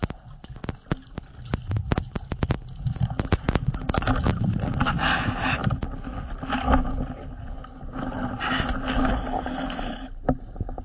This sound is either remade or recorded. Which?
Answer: recorded